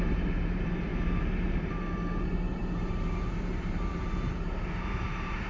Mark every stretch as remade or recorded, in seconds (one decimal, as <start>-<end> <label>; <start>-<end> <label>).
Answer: 0.0-5.5 remade